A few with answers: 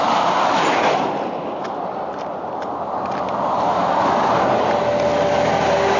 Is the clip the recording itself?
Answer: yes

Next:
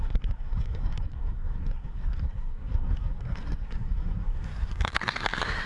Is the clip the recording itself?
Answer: no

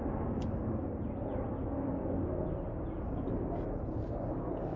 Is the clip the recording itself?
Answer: yes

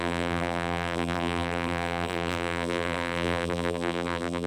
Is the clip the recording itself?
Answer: no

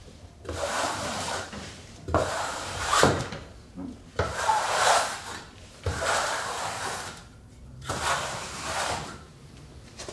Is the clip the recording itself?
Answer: no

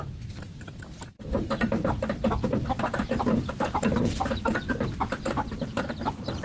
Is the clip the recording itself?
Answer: no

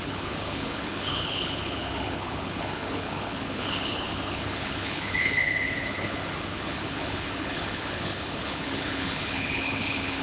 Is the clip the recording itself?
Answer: no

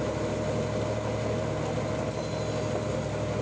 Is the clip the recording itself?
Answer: yes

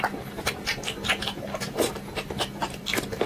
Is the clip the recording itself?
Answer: yes